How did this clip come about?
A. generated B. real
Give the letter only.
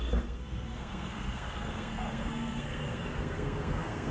A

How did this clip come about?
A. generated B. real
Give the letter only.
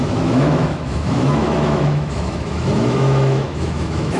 A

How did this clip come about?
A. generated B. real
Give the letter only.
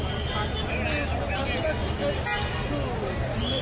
B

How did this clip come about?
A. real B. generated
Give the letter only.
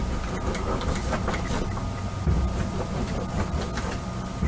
A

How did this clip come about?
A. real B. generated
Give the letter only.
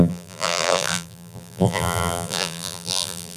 B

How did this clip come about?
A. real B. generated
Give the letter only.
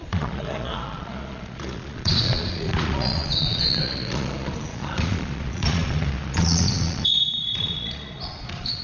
B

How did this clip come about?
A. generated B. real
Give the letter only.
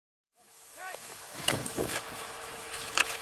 A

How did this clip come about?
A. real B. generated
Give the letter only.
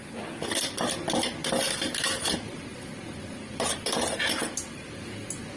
A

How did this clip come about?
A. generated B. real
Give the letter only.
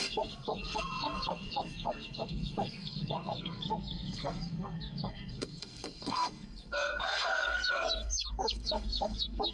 A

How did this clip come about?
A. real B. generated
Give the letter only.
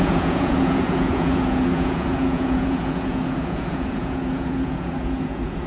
B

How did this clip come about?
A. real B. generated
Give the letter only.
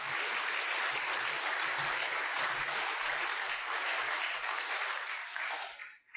B